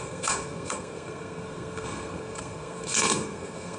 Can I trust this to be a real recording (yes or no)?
no